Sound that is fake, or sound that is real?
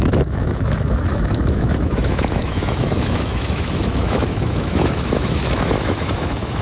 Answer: fake